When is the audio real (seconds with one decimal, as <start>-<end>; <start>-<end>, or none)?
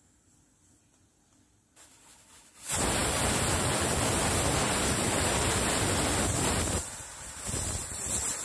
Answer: 0.0-8.4